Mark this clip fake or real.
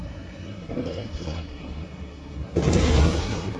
fake